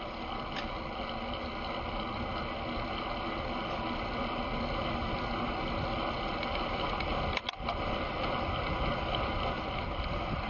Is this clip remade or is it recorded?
recorded